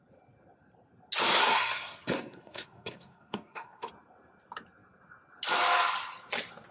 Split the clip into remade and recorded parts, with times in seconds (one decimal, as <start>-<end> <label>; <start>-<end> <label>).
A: 0.0-1.4 recorded; 1.4-3.9 remade; 3.9-6.7 recorded